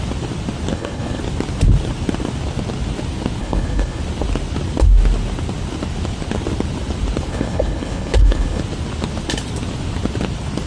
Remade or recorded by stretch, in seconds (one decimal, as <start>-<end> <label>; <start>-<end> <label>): 0.0-0.7 recorded; 0.7-1.2 remade; 1.2-3.4 recorded; 3.4-4.0 remade; 4.0-7.3 recorded; 7.3-8.6 remade; 8.6-10.7 recorded